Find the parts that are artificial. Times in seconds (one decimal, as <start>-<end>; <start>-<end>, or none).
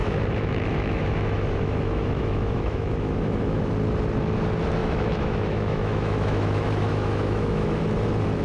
0.0-3.7; 4.8-7.8